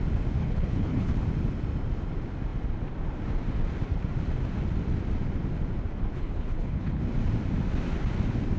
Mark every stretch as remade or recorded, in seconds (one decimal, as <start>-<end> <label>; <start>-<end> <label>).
0.0-0.4 recorded; 0.4-1.1 remade; 1.1-6.1 recorded; 6.1-7.0 remade; 7.0-8.6 recorded